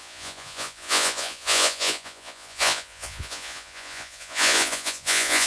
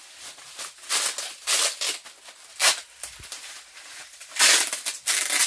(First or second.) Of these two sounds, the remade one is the first